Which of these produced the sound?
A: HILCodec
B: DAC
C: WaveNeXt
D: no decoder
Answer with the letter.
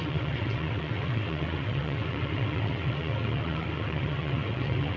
C